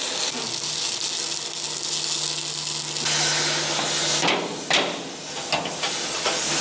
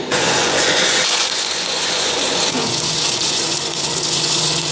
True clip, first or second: first